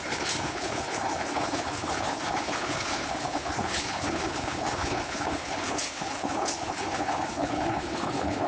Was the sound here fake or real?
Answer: fake